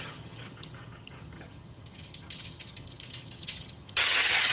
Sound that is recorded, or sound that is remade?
remade